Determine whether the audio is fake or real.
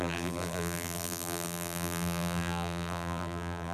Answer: fake